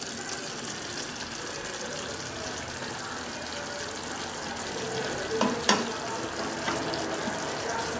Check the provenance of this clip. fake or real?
real